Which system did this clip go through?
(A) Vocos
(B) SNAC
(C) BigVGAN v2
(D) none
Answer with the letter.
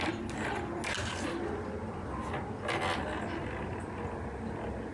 D